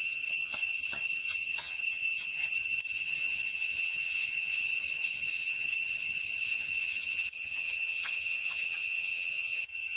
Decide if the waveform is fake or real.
fake